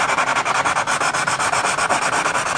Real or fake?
real